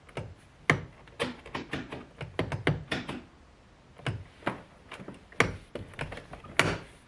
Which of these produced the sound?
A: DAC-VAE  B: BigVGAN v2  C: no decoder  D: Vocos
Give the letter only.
C